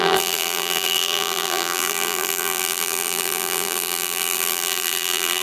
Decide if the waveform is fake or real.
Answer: fake